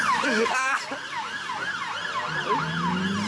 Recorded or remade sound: recorded